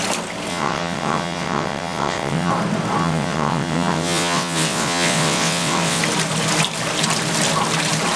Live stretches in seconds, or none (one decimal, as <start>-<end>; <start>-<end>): 0.0-0.5; 2.5-3.0; 6.0-8.2